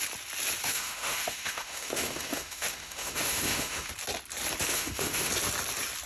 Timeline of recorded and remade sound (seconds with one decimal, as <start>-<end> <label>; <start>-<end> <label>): 0.0-0.6 recorded; 0.6-3.9 remade; 3.9-4.7 recorded; 4.7-5.3 remade; 5.3-6.1 recorded